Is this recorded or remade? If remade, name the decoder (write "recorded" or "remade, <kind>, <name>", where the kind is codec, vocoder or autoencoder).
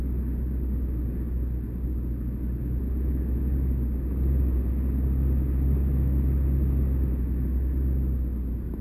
recorded